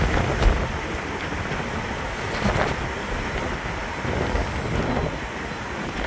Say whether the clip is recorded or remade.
recorded